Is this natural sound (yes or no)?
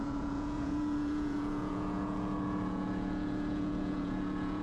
no